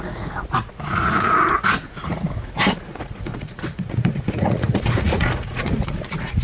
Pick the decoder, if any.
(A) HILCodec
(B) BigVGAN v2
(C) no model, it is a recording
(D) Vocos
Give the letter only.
D